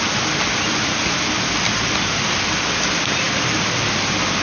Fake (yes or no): no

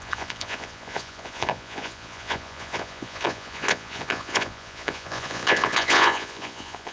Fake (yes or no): yes